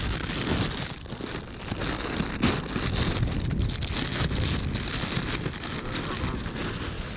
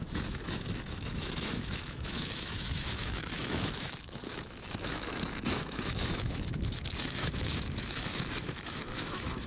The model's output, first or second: second